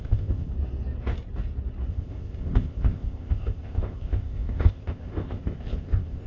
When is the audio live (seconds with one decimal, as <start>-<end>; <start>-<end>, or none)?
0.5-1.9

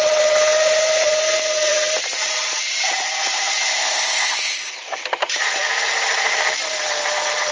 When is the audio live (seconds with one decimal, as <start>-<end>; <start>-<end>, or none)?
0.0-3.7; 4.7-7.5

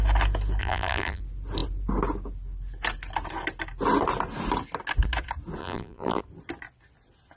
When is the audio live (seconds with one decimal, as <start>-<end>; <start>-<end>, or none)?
0.0-0.6; 1.2-5.6; 6.2-7.4